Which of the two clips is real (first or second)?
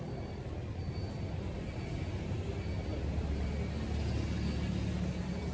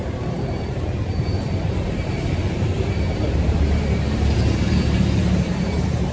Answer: first